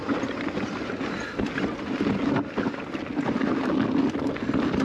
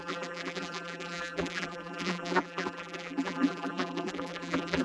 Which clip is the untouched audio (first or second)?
first